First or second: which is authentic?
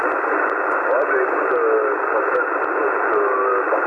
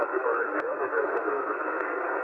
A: first